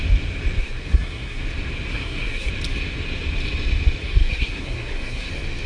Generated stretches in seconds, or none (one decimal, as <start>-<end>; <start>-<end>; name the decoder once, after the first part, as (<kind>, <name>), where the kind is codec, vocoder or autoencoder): 0.6-1.4 (codec, SNAC); 1.9-2.5; 4.0-5.3